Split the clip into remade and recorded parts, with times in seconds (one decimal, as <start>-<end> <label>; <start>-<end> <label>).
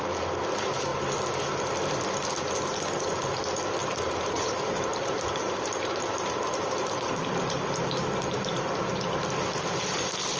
0.0-3.8 recorded; 3.8-7.3 remade; 7.3-10.4 recorded